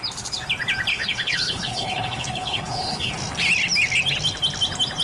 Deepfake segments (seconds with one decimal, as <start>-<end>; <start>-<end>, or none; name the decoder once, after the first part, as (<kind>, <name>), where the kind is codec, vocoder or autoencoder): 0.9-3.1 (codec, HILCodec)

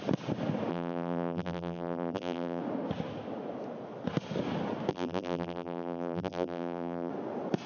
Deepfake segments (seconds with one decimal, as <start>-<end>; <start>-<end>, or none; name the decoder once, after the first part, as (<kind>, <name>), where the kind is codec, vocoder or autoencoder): 0.7-2.6 (vocoder, BigVGAN v2); 4.9-7.1

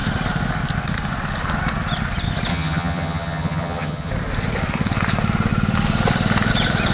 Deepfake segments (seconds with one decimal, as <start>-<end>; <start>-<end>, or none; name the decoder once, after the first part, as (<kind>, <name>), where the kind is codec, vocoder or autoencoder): 2.5-4.1 (vocoder, HiFi-GAN)

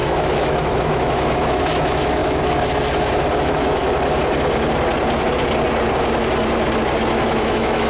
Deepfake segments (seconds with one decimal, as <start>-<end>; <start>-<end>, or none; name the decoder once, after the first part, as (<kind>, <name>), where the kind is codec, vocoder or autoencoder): 0.0-2.2 (autoencoder, DAC-VAE); 3.4-3.8; 7.3-7.9

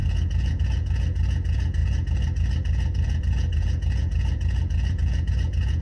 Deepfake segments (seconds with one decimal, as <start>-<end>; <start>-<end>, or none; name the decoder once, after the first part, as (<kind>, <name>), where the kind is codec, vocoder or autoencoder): 0.0-5.8 (vocoder, Vocos)

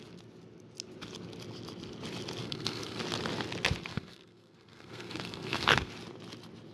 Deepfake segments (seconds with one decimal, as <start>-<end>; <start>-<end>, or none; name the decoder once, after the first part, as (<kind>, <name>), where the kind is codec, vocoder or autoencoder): 2.4-3.0 (codec, SNAC); 3.9-5.9